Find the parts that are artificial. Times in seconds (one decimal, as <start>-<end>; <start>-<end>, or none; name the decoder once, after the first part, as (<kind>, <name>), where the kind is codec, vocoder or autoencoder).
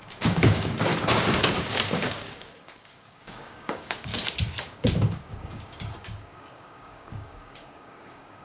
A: 0.0-0.9 (codec, DAC); 1.7-4.1; 4.6-8.4